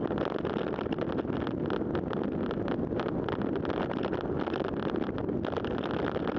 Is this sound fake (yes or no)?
no